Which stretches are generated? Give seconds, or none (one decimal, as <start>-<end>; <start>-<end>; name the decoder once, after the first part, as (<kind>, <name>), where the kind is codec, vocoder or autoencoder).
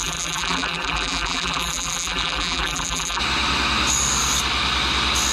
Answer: 0.0-3.2 (vocoder, BigVGAN v2)